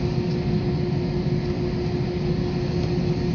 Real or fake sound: real